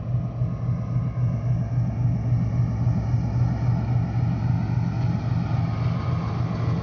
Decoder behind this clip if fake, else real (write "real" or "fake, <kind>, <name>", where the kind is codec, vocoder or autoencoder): real